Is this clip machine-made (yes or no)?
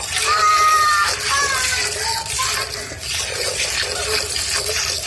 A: no